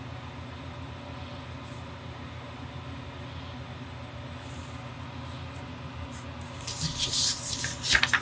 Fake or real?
real